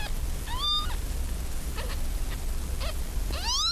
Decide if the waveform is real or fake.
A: real